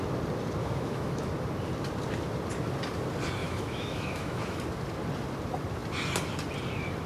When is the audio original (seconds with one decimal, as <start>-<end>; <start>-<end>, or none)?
0.0-0.6; 1.3-3.4; 4.6-7.1